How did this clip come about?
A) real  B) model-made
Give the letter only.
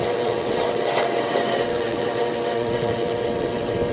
B